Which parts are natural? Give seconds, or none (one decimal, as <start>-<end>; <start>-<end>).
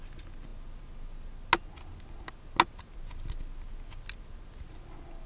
0.0-5.3